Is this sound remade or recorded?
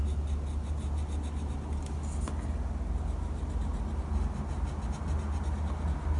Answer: recorded